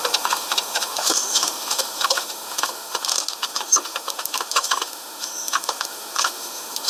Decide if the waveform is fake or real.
fake